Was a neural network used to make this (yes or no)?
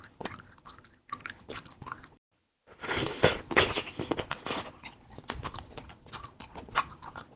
yes